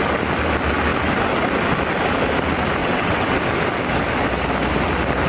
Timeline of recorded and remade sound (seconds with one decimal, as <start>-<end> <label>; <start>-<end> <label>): 0.0-2.8 recorded; 2.8-3.4 remade; 3.4-5.3 recorded